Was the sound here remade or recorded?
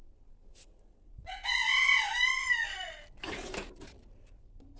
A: recorded